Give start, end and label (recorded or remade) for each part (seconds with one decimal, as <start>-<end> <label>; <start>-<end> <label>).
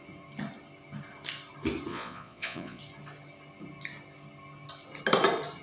0.0-1.9 recorded; 1.9-2.8 remade; 2.8-5.6 recorded